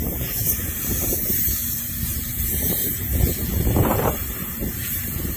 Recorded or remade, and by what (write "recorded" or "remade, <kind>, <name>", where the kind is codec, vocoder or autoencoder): remade, vocoder, BigVGAN v2